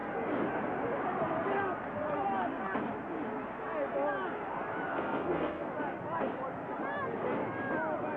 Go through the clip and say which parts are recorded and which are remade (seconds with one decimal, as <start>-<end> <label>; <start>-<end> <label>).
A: 0.0-4.9 recorded; 4.9-5.7 remade; 5.7-8.2 recorded